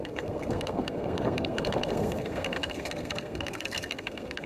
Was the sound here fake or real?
fake